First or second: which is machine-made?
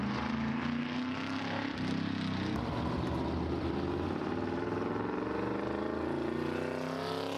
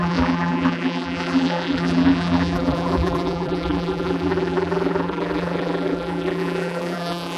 second